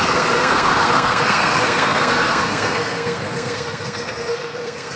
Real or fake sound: fake